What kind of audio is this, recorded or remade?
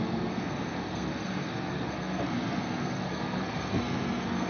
remade